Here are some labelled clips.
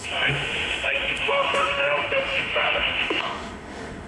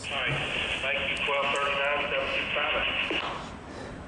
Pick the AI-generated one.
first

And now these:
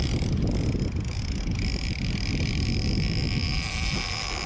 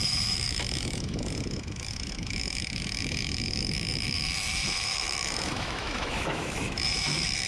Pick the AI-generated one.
second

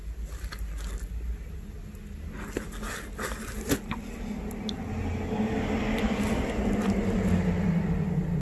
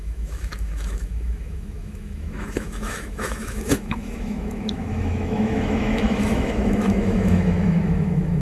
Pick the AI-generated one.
second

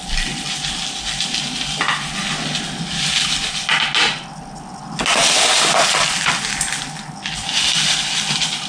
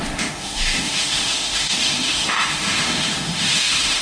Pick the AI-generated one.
second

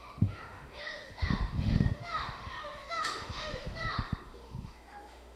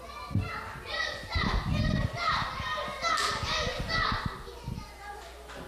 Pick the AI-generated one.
first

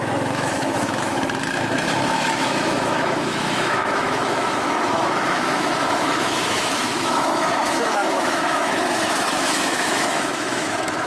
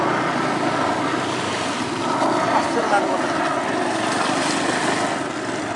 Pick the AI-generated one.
first